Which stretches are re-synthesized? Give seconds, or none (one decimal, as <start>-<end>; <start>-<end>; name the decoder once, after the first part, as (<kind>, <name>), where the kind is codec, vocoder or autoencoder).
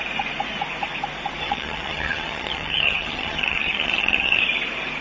1.4-4.4 (vocoder, HiFi-GAN)